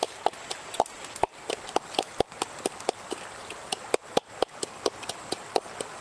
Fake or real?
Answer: real